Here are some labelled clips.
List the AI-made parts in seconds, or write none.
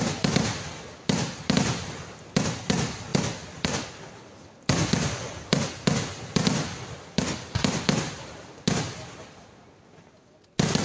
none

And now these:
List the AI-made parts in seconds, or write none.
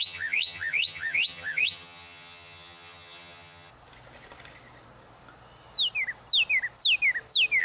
0.0-3.7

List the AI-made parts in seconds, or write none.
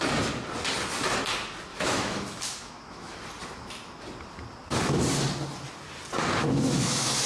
1.7-3.2; 6.4-7.3